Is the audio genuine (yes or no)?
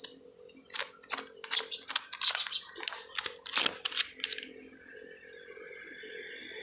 yes